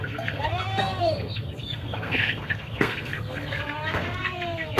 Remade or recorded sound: remade